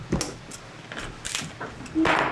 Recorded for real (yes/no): yes